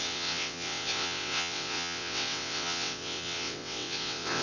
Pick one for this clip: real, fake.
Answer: fake